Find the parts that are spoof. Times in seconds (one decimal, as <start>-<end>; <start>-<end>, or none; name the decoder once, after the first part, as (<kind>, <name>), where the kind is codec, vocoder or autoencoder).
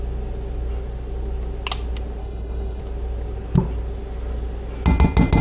2.2-2.8 (codec, HILCodec)